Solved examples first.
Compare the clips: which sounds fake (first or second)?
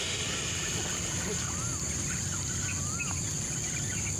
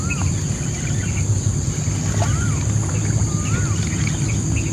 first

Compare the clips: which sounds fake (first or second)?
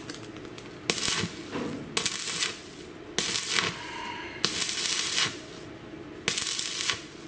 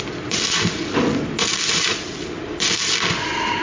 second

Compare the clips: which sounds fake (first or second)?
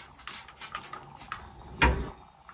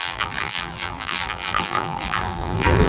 second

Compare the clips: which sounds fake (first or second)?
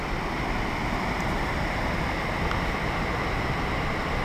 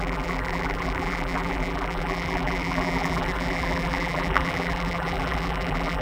second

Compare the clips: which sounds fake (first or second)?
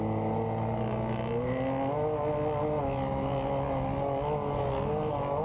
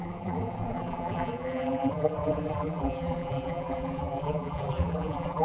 second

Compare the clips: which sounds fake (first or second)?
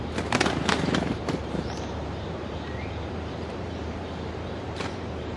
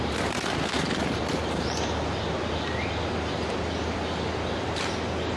first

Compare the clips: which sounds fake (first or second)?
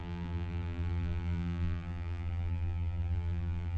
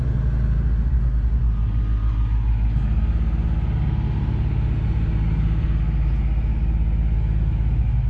first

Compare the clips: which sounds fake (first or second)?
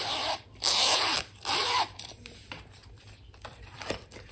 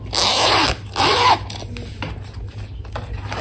first